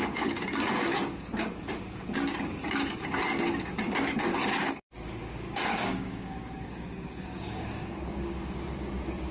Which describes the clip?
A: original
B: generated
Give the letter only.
B